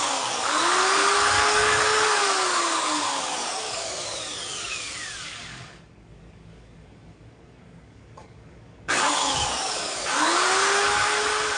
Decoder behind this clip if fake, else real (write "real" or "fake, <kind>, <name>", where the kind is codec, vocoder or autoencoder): fake, codec, DAC